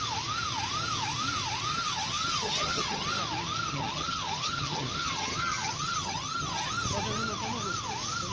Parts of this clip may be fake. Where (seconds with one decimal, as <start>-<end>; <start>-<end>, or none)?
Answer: 1.7-3.1; 3.7-6.7